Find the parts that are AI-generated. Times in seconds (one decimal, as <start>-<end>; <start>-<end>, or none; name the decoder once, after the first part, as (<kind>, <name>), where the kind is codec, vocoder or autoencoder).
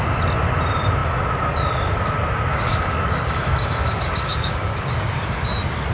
2.5-5.4 (codec, DAC)